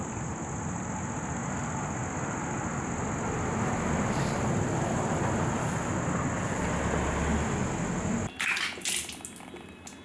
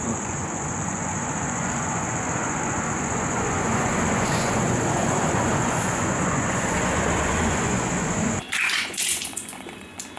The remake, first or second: second